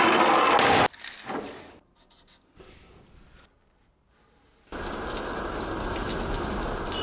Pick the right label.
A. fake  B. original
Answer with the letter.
B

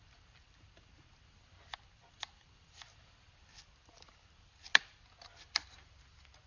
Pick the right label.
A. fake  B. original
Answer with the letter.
B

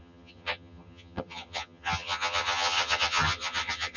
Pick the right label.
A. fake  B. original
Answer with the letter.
A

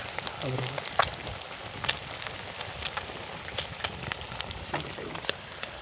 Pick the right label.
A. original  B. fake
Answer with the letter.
A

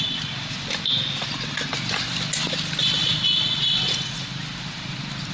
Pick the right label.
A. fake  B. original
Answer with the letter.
B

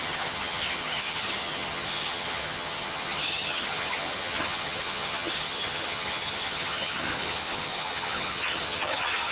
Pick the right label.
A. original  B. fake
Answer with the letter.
B